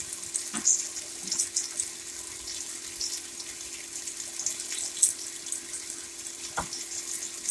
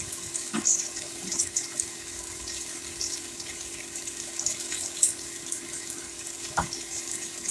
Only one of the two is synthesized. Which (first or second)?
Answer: second